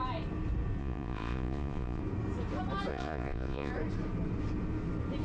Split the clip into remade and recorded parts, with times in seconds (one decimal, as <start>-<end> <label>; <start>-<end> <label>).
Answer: 0.0-0.8 recorded; 0.8-2.0 remade; 2.0-2.9 recorded; 2.9-3.7 remade; 3.7-5.2 recorded